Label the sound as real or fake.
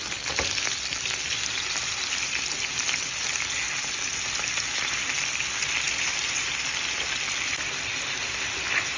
real